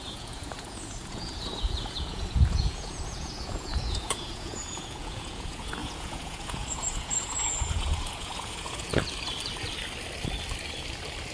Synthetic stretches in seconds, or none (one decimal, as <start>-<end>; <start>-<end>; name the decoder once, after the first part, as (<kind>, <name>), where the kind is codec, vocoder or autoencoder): 0.0-8.9 (vocoder, Vocos)